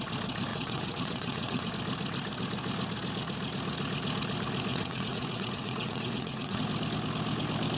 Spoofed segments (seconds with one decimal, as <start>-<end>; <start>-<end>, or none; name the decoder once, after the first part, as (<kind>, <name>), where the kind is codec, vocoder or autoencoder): 0.5-1.7 (vocoder, WaveNeXt); 4.7-6.6